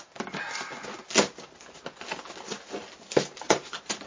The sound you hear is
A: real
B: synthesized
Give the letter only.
A